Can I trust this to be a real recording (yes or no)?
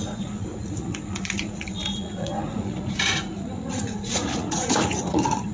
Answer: no